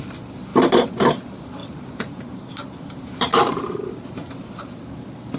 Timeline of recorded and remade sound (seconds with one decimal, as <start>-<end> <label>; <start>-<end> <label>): 0.0-0.5 recorded; 0.5-1.1 remade; 1.1-1.6 recorded; 1.6-4.8 remade; 4.8-5.4 recorded